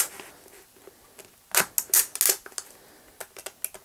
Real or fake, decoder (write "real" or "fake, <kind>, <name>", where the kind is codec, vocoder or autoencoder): real